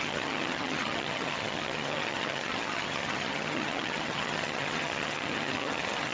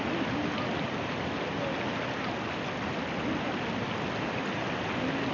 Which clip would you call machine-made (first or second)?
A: first